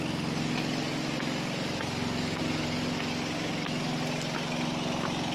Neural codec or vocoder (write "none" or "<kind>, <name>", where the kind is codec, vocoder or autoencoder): none